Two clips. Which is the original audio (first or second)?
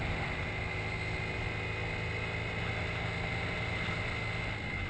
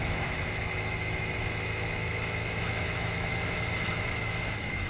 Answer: first